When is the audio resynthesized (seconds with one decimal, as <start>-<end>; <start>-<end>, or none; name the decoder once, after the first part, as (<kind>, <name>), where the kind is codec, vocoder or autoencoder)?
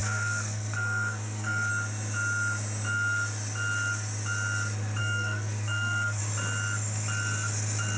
0.0-1.7 (codec, SNAC); 5.0-6.2